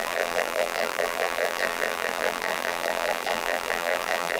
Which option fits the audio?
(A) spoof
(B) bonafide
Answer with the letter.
A